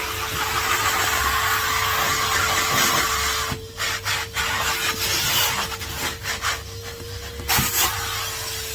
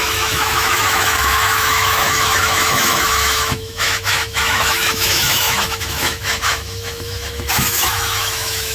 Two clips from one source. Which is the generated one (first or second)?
second